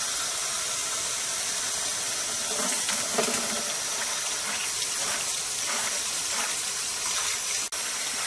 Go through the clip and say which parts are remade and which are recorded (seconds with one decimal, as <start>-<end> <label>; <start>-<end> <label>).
0.0-0.8 recorded; 0.8-1.6 remade; 1.6-8.3 recorded